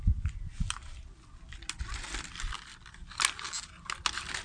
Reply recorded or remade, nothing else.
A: recorded